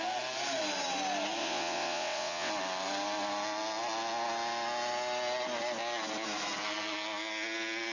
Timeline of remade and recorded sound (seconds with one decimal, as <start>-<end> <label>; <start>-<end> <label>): 0.0-1.4 recorded; 1.4-2.5 remade; 2.5-7.9 recorded